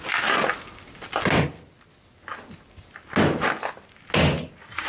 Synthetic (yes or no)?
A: no